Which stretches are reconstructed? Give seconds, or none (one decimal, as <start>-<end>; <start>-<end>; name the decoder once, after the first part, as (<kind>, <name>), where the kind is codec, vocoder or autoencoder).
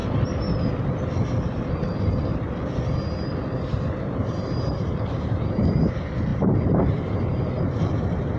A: 4.2-5.8 (vocoder, BigVGAN v2); 6.3-8.4